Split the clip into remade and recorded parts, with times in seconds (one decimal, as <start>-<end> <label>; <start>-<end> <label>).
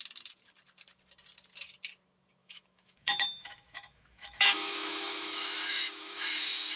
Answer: 0.0-2.4 recorded; 2.4-6.8 remade